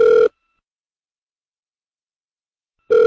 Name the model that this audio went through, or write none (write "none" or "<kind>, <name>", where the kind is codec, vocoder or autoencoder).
none